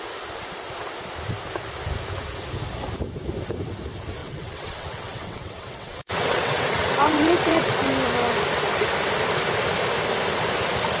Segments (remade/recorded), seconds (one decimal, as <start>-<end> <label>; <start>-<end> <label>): 0.0-4.2 recorded; 4.2-7.9 remade; 7.9-11.0 recorded